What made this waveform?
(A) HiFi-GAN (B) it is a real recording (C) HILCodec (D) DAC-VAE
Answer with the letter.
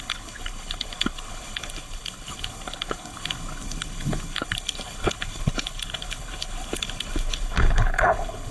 C